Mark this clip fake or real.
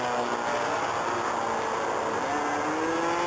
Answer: real